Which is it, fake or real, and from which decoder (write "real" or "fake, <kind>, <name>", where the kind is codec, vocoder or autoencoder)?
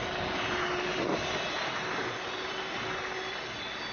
real